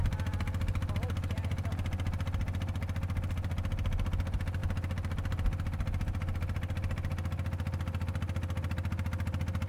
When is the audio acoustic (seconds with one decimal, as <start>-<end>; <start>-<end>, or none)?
0.0-9.7